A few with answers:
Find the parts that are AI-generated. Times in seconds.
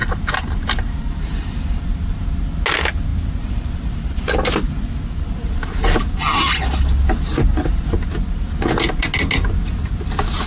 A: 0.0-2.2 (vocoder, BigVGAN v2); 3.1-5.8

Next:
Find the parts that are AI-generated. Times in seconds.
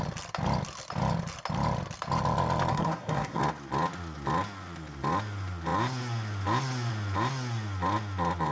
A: 2.7-3.4 (codec, SNAC)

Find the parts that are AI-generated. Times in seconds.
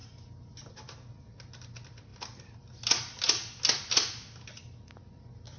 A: none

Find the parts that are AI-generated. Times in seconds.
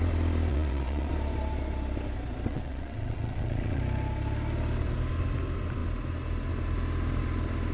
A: 0.5-1.1 (vocoder, WaveNeXt); 2.5-3.8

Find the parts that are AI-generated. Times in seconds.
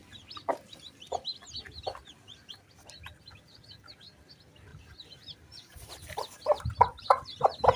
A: 4.7-7.8 (vocoder, BigVGAN v2)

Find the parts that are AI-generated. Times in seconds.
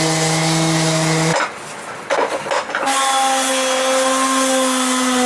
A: none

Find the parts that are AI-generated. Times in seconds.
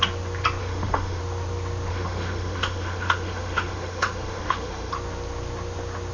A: 0.6-1.2 (autoencoder, DAC-VAE); 1.9-4.9